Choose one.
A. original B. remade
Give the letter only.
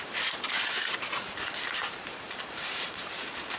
B